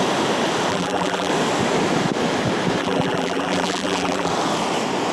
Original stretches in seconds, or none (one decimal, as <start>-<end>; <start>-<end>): 0.0-0.7; 1.3-2.8; 4.3-5.1